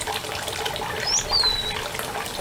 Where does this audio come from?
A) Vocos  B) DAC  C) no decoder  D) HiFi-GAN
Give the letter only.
C